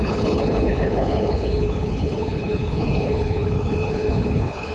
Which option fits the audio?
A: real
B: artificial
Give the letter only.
B